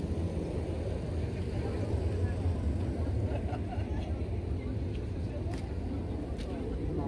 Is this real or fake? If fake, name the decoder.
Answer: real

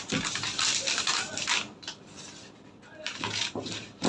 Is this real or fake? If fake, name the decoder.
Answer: real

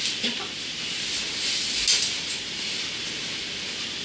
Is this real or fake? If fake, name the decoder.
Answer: real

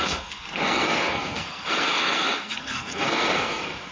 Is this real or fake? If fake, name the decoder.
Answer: fake, codec, SNAC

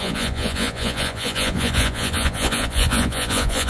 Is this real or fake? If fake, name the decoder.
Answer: fake, vocoder, Vocos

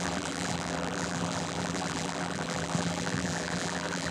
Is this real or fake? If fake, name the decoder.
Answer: fake, vocoder, BigVGAN v2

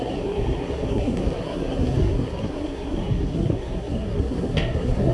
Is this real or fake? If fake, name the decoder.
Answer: fake, codec, SNAC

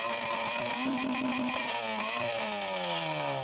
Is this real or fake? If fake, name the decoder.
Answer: fake, vocoder, BigVGAN v2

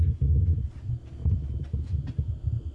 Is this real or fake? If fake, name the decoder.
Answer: real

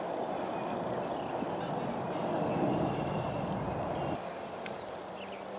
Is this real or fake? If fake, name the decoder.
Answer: real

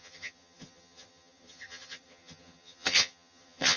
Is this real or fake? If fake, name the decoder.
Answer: fake, vocoder, HiFi-GAN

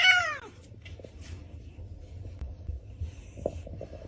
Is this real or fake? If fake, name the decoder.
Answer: fake, vocoder, BigVGAN v2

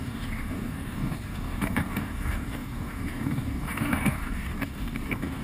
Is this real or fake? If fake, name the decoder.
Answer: fake, codec, DAC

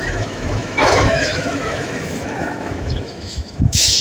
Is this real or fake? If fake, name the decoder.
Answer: fake, autoencoder, DAC-VAE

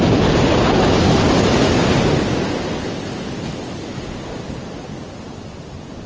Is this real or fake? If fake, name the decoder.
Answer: real